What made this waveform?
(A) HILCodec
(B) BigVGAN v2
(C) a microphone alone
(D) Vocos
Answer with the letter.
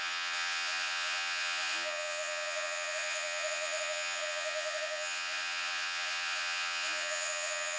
D